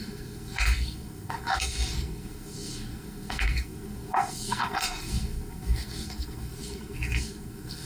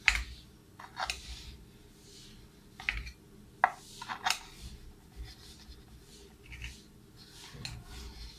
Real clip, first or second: second